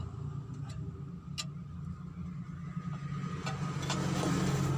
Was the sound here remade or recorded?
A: recorded